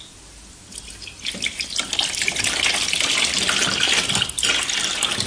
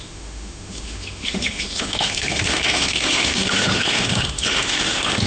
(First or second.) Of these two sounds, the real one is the first